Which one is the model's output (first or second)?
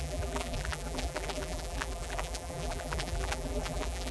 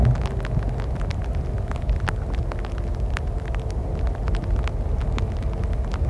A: first